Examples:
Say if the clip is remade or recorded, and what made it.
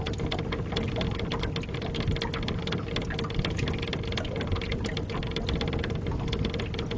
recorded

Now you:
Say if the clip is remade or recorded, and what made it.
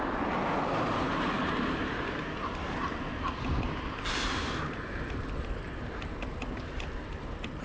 recorded